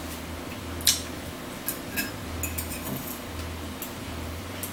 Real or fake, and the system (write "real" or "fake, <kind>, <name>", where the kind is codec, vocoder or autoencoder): real